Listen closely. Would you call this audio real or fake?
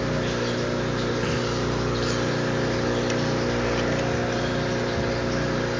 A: real